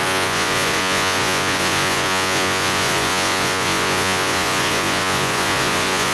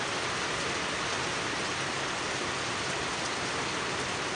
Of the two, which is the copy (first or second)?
first